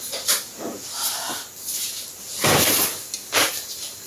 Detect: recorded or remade recorded